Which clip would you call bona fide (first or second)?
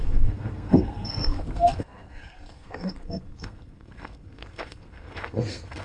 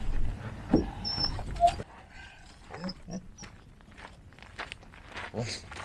second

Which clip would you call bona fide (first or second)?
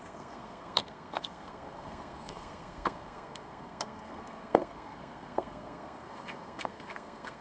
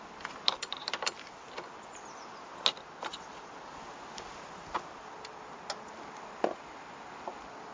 second